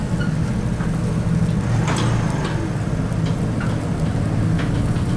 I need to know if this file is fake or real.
real